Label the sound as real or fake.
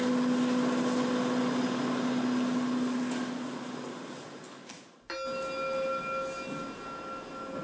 real